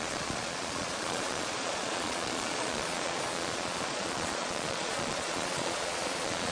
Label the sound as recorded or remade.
remade